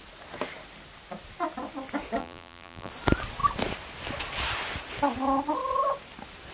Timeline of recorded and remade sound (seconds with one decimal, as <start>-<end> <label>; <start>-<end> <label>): 0.0-2.2 recorded; 2.2-2.9 remade; 2.9-6.5 recorded